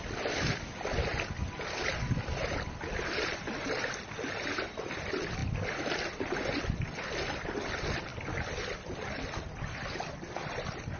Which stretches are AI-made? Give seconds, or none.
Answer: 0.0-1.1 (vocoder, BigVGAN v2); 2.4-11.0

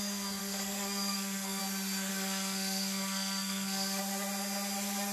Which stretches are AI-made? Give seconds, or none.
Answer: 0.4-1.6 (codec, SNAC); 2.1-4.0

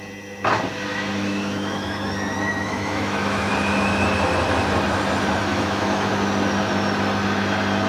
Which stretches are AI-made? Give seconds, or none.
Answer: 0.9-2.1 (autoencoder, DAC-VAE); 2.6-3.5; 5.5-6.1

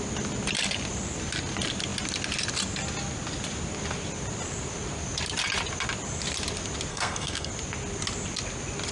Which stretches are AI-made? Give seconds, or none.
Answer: 6.9-7.5 (codec, SNAC)

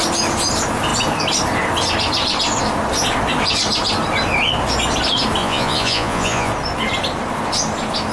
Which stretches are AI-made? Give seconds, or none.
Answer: 5.4-6.5 (vocoder, Vocos)

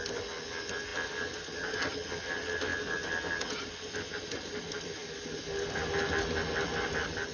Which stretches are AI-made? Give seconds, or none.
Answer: none